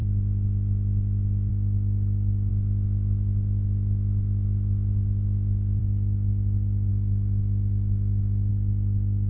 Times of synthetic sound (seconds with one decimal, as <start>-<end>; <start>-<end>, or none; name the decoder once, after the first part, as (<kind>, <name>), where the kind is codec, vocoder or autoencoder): 0.0-1.5 (vocoder, Vocos); 2.5-5.8; 6.9-8.5